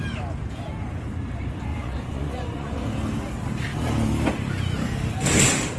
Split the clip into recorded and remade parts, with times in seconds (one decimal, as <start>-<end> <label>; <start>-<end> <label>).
0.0-1.7 recorded; 1.7-2.8 remade; 2.8-5.8 recorded